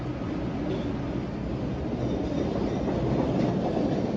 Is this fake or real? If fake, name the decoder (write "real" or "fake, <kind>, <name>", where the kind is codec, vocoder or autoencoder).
real